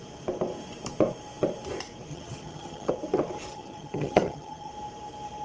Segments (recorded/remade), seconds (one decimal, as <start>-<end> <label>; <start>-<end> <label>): 0.0-2.1 recorded; 2.1-2.9 remade; 2.9-3.5 recorded; 3.5-4.7 remade; 4.7-5.4 recorded